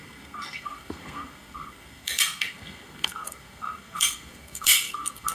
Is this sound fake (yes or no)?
yes